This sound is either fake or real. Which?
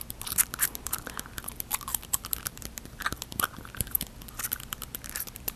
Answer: fake